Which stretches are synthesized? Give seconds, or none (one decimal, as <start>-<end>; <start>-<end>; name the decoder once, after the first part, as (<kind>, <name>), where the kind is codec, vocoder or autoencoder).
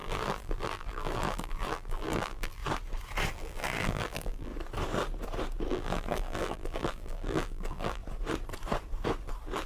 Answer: 0.0-2.6 (vocoder, BigVGAN v2); 3.3-4.5; 5.7-8.0